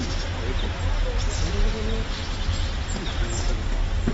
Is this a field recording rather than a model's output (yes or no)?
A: yes